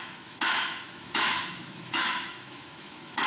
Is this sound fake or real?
fake